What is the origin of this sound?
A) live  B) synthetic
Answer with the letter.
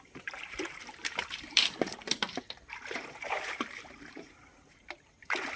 B